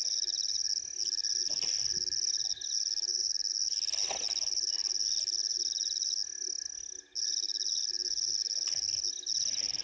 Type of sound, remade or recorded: recorded